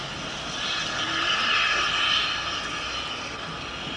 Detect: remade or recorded recorded